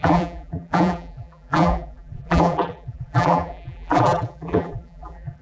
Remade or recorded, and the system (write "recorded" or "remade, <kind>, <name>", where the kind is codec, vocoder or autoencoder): remade, vocoder, BigVGAN v2